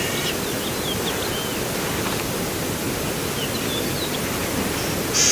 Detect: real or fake fake